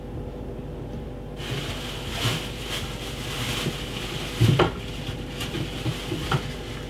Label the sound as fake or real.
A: real